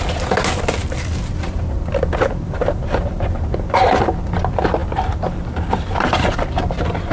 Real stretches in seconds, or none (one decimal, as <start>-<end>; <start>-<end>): 0.0-0.8; 4.0-4.8; 6.5-7.1